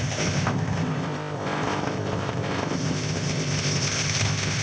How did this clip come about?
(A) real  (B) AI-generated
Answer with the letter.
B